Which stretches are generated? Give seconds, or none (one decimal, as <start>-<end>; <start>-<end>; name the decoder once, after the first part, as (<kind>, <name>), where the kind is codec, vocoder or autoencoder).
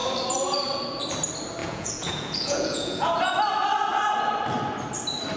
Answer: 1.6-3.3 (vocoder, Vocos)